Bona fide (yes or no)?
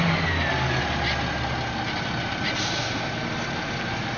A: yes